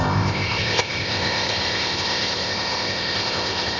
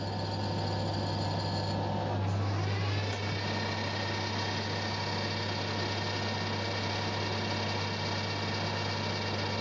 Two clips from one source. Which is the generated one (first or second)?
first